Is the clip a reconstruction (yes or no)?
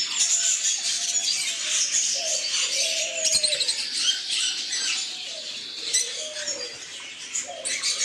no